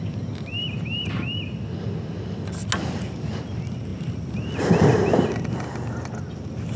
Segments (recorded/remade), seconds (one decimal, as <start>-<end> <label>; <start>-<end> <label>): 0.0-6.8 recorded